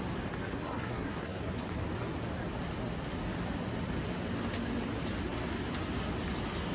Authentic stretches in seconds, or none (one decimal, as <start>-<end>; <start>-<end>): 0.0-0.5; 1.5-6.7